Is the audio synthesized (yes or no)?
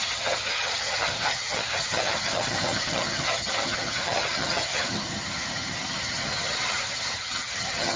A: yes